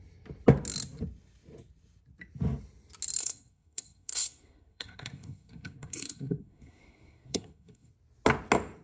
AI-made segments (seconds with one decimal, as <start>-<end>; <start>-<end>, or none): 3.2-7.9